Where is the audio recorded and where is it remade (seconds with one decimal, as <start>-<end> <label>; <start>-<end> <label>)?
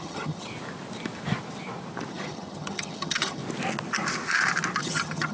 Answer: 0.0-0.5 remade; 0.5-2.1 recorded; 2.1-3.4 remade; 3.4-4.8 recorded; 4.8-5.3 remade